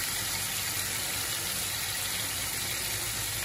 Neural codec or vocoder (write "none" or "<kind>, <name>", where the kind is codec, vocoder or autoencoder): none